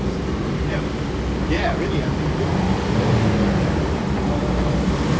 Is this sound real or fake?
real